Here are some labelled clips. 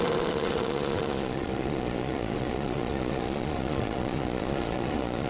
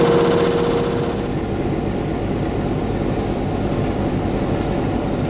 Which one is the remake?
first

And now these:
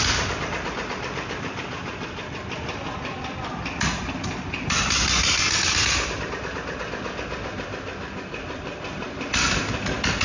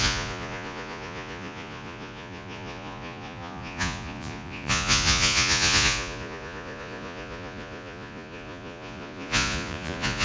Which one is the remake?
second